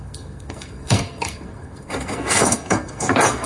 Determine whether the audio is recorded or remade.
remade